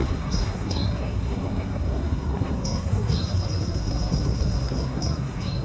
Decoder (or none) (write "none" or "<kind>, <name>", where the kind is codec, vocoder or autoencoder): codec, SNAC